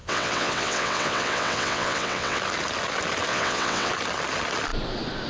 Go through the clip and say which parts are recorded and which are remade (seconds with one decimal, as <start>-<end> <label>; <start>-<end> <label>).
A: 0.0-2.4 remade; 2.4-3.3 recorded; 3.3-3.9 remade; 3.9-5.3 recorded